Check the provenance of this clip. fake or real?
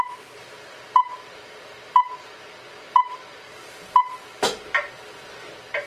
fake